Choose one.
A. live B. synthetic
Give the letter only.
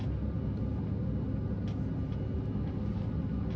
A